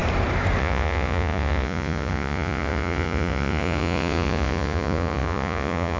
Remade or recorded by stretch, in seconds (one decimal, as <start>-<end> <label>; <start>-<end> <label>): 0.0-0.6 recorded; 0.6-6.0 remade